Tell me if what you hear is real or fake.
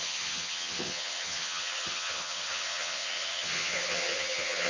fake